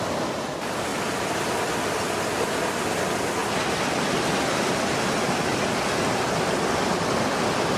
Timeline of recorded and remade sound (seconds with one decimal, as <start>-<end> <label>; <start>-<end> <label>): 0.0-7.8 recorded